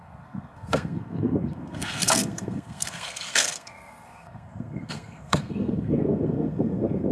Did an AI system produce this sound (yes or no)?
yes